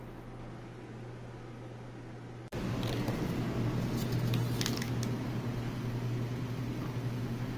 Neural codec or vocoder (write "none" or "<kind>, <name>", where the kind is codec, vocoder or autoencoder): none